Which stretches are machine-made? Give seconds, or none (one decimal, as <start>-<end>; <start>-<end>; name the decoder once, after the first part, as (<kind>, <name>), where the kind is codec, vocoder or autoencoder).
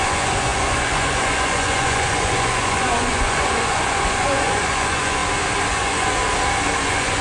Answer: 0.0-5.2 (vocoder, Vocos); 5.7-6.2; 6.8-7.2